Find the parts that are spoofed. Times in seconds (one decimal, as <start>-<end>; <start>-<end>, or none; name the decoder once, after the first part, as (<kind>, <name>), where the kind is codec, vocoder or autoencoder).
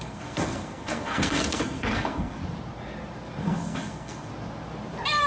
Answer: 0.0-2.4 (codec, SNAC); 3.4-4.3